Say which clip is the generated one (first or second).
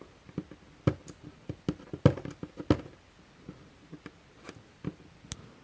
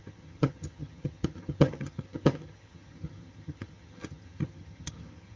second